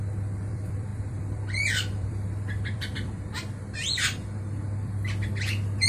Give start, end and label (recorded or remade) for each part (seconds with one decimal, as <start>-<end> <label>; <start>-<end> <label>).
0.0-5.9 remade

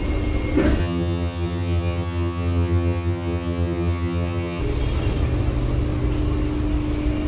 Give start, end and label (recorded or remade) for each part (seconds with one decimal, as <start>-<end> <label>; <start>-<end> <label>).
0.0-0.8 recorded; 0.8-4.6 remade; 4.6-7.3 recorded

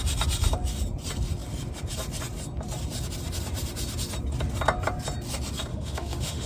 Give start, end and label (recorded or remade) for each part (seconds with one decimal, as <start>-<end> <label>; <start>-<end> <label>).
0.0-5.7 recorded; 5.7-6.5 remade

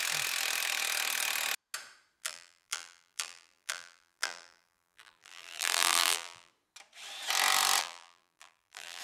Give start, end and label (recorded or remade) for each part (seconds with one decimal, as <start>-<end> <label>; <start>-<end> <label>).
0.0-2.2 recorded; 2.2-6.5 remade; 6.5-7.8 recorded; 7.8-9.0 remade

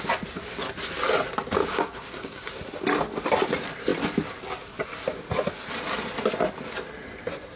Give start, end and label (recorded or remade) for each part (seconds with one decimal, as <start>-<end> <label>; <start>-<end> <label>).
0.0-1.6 recorded; 1.6-2.6 remade; 2.6-7.6 recorded

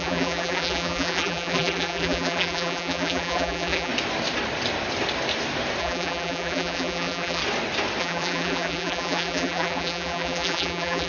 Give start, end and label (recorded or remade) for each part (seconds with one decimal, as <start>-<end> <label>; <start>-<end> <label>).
0.0-3.9 remade; 3.9-5.8 recorded; 5.8-7.4 remade; 7.4-8.0 recorded; 8.0-11.1 remade

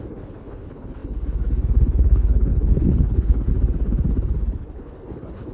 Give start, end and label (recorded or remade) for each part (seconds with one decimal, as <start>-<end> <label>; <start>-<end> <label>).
0.0-3.5 remade; 3.5-4.6 recorded; 4.6-5.5 remade